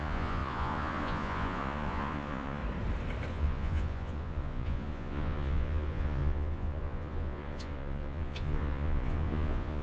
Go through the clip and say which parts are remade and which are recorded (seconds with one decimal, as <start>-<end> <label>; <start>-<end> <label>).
0.0-2.6 remade; 2.6-3.3 recorded; 3.3-9.8 remade